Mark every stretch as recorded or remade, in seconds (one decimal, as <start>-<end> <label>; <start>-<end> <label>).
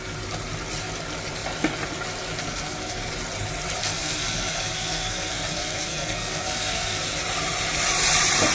0.0-2.4 recorded; 2.4-3.1 remade; 3.1-3.8 recorded; 3.8-7.0 remade; 7.0-8.5 recorded